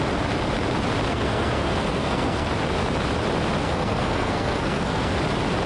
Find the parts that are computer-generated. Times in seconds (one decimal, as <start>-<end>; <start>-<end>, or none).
1.1-2.5; 3.6-5.1